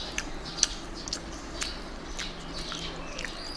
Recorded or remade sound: recorded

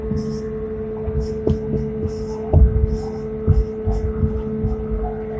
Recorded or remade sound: recorded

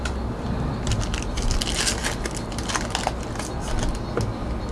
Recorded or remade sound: recorded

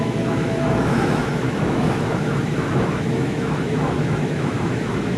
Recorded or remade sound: remade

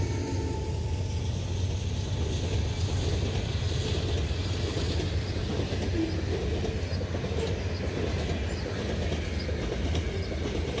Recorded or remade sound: recorded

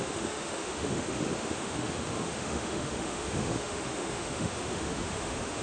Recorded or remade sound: remade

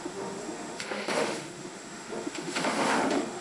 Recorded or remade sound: remade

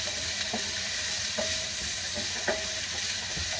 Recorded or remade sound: recorded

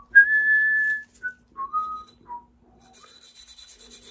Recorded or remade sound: recorded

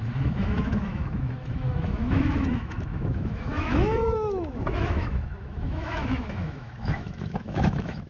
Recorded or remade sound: remade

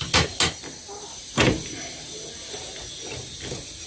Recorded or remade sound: recorded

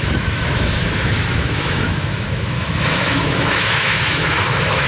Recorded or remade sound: remade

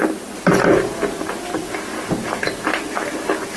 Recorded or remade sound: recorded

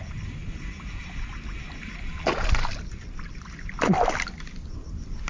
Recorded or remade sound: recorded